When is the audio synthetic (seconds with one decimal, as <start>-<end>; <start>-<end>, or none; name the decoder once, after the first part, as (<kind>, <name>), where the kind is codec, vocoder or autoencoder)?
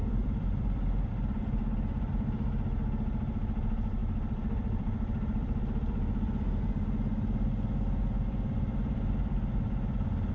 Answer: 0.0-1.1 (vocoder, BigVGAN v2); 4.0-6.6